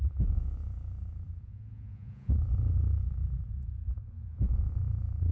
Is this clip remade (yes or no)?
yes